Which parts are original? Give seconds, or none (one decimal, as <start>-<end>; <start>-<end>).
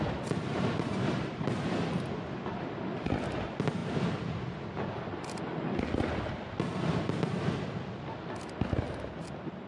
0.0-0.5; 1.6-9.7